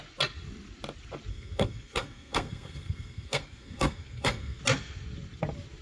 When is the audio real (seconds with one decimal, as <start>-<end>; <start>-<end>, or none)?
0.0-1.3; 4.6-5.8